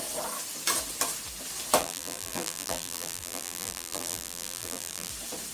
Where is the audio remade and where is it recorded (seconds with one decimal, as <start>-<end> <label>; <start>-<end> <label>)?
0.0-1.8 recorded; 1.8-5.1 remade; 5.1-5.5 recorded